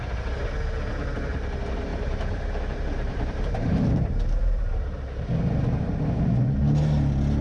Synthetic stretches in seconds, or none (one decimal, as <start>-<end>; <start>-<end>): 1.9-5.3